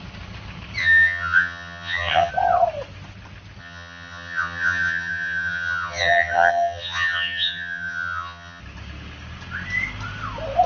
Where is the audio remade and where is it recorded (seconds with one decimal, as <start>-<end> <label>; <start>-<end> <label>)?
0.0-0.8 recorded; 0.8-2.3 remade; 2.3-3.6 recorded; 3.6-8.6 remade; 8.6-10.7 recorded